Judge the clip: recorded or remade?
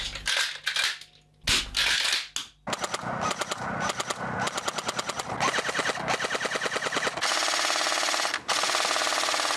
recorded